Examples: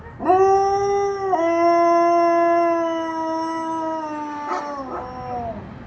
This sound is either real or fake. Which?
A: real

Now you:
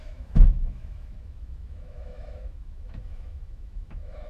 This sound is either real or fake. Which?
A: fake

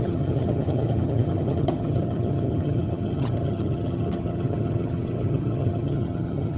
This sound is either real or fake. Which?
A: fake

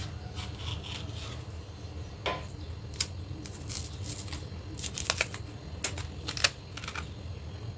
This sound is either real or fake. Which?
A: real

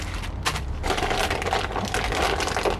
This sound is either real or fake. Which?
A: real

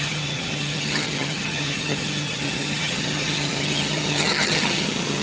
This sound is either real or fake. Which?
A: fake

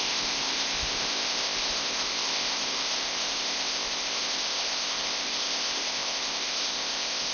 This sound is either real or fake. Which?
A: fake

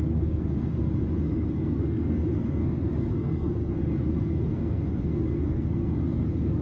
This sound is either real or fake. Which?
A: fake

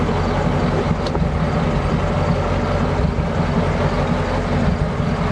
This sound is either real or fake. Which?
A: real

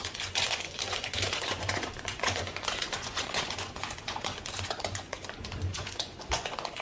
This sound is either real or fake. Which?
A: fake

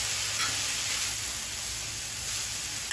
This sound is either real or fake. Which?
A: real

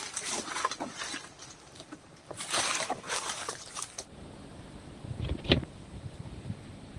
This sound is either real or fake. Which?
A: fake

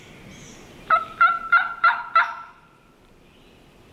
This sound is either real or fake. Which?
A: fake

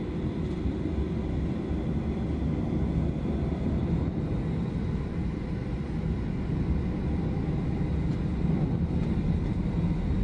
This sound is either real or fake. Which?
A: real